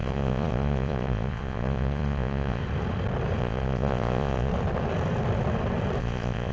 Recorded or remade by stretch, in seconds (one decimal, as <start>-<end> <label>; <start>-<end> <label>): 0.0-2.6 remade; 2.6-3.4 recorded; 3.4-4.5 remade; 4.5-6.0 recorded; 6.0-6.5 remade